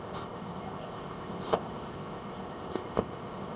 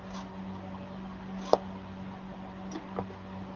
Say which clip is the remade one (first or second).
first